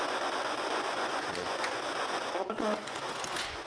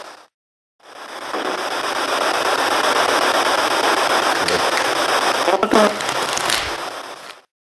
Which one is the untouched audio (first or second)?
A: second